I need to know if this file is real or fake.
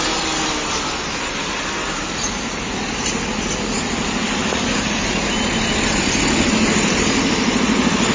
real